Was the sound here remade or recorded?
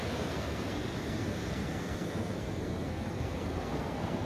remade